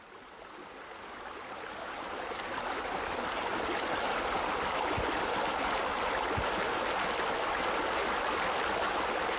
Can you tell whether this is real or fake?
real